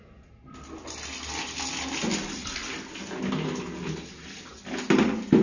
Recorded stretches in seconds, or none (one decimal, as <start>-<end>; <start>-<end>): 0.0-5.4